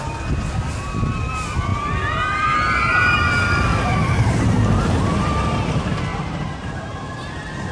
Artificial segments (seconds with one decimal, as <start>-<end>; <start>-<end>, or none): 1.7-3.2; 4.0-5.3; 6.1-7.3